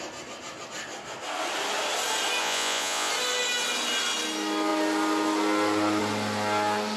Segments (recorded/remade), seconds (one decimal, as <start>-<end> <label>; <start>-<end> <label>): 0.0-2.4 recorded; 2.4-3.1 remade; 3.1-7.0 recorded